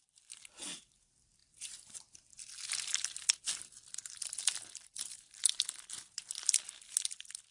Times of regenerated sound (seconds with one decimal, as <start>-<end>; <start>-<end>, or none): none